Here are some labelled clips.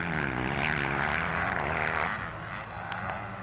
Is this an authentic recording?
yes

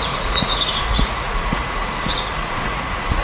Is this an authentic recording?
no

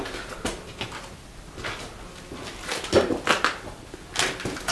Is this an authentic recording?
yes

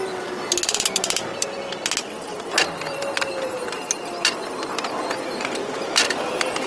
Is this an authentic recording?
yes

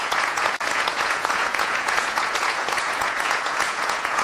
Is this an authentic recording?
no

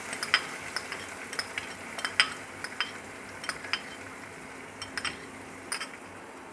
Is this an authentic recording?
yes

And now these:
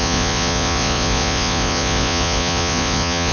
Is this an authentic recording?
no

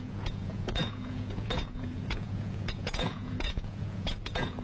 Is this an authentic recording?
no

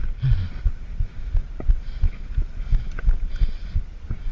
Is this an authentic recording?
yes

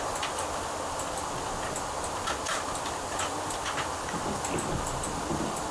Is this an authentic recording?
yes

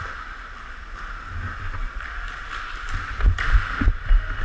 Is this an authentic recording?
yes